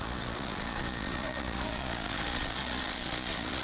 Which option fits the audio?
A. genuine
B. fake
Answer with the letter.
B